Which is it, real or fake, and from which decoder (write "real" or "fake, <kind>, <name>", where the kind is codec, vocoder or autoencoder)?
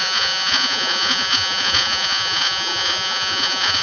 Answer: fake, vocoder, Vocos